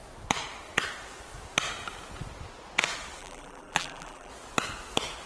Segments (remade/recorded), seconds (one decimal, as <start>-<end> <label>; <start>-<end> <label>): 0.0-3.2 recorded; 3.2-4.3 remade; 4.3-5.3 recorded